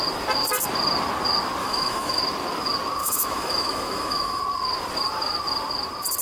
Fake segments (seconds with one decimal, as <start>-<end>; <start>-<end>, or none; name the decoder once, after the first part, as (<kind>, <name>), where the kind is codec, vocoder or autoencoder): 1.6-2.2 (autoencoder, DAC-VAE); 3.0-4.4